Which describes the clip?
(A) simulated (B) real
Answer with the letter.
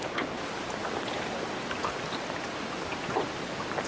B